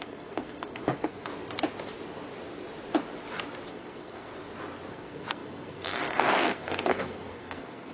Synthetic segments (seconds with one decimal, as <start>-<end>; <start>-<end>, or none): 0.0-1.3; 3.7-4.3; 4.9-7.9